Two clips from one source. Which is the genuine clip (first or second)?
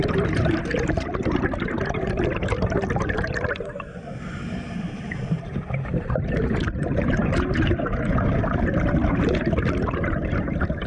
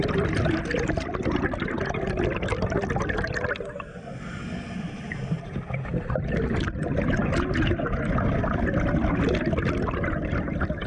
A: second